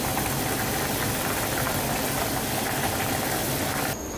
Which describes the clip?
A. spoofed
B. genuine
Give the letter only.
B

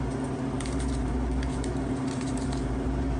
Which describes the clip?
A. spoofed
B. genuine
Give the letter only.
A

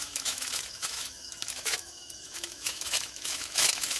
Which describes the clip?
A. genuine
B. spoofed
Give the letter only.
B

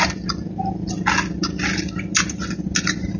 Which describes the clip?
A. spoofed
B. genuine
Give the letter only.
B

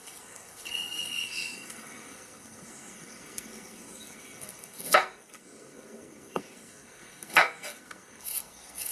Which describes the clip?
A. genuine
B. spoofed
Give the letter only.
B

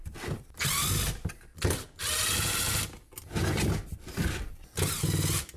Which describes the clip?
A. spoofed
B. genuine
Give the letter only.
B